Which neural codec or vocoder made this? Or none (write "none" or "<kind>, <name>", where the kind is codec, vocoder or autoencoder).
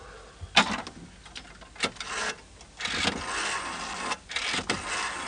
none